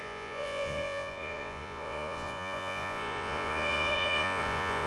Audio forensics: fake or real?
fake